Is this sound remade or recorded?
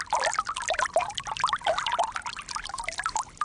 recorded